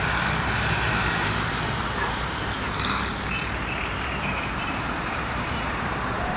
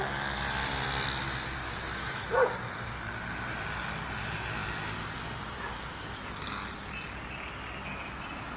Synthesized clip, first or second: first